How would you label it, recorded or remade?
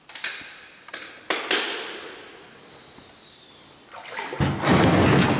recorded